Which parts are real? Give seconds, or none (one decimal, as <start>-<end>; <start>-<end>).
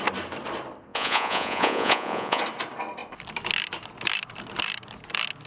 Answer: 0.0-0.9; 2.4-5.5